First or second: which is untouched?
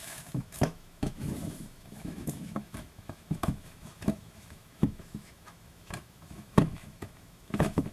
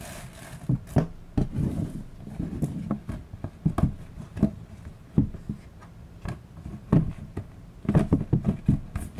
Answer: second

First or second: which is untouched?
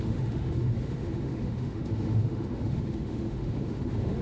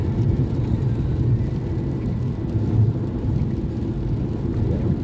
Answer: second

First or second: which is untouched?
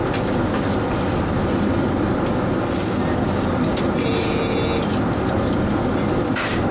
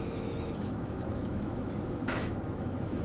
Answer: first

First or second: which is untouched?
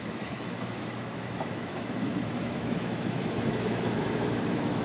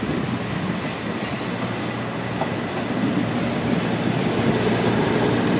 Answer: second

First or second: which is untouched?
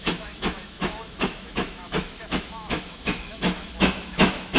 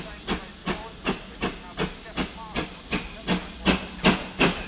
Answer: second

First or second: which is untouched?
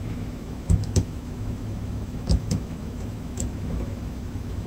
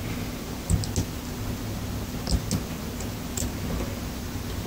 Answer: second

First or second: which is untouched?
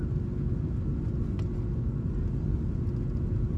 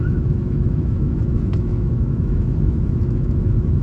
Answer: first